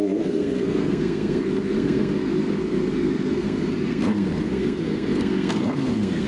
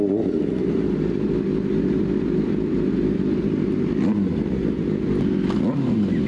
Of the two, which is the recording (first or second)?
second